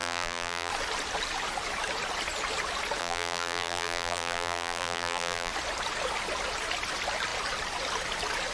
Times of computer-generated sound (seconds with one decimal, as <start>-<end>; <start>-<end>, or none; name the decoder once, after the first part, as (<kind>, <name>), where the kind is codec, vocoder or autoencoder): 0.0-0.7 (vocoder, BigVGAN v2); 3.0-5.5